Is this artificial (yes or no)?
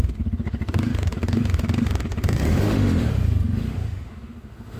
yes